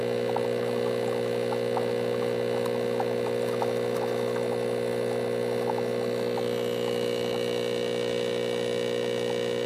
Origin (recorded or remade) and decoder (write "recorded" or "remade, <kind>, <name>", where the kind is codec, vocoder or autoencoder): recorded